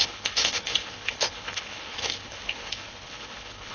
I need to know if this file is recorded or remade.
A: remade